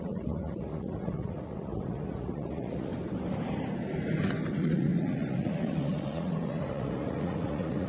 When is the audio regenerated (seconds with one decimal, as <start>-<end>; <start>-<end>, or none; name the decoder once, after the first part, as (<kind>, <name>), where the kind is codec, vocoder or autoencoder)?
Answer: 0.0-2.9 (vocoder, Vocos); 4.5-7.9